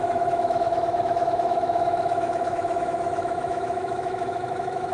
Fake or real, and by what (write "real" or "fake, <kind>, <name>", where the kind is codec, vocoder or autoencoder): fake, autoencoder, DAC-VAE